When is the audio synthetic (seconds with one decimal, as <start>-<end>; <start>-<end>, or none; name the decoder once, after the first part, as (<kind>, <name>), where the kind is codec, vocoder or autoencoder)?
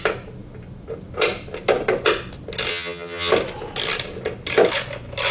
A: 2.7-3.3 (vocoder, HiFi-GAN)